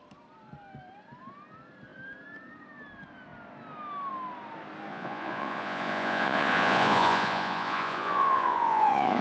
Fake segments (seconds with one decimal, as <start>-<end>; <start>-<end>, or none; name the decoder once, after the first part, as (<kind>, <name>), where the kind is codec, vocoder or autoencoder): 4.9-9.2 (vocoder, Vocos)